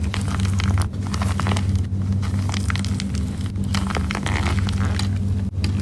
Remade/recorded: recorded